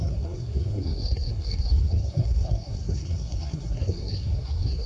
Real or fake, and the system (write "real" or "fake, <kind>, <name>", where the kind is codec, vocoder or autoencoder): fake, codec, SNAC